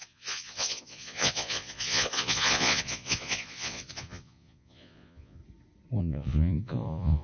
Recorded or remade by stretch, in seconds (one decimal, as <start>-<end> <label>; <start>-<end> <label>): 0.0-5.4 remade; 5.4-6.0 recorded; 6.0-7.2 remade

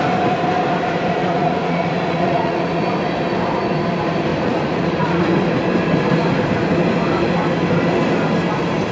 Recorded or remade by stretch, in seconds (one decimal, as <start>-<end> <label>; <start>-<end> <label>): 0.0-1.2 recorded; 1.2-2.8 remade; 2.8-4.3 recorded; 4.3-5.3 remade; 5.3-8.9 recorded

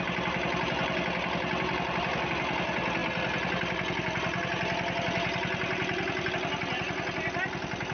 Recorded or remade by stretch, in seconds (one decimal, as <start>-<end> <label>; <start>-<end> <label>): 0.0-7.9 recorded

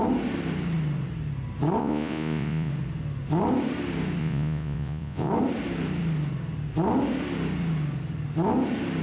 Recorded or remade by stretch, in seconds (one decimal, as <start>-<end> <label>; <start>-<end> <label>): 0.0-1.8 recorded; 1.8-2.7 remade; 2.7-4.2 recorded; 4.2-5.3 remade; 5.3-9.0 recorded

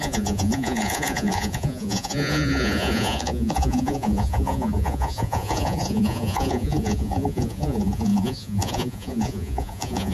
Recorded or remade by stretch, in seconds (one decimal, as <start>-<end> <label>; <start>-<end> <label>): 0.0-10.1 remade

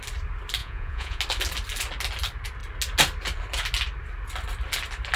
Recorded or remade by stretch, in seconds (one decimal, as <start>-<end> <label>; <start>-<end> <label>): 0.0-0.6 recorded; 0.6-1.2 remade; 1.2-5.2 recorded

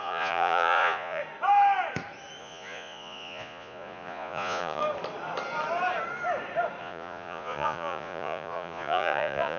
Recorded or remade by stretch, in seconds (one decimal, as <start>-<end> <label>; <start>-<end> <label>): 0.0-1.2 remade; 1.2-2.4 recorded; 2.4-4.8 remade; 4.8-6.8 recorded; 6.8-9.6 remade